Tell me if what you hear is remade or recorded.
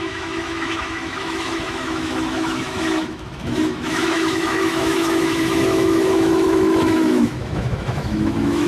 remade